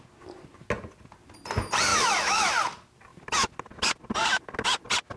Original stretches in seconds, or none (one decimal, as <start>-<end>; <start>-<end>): 0.0-1.9; 2.5-5.2